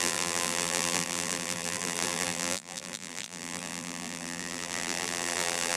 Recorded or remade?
remade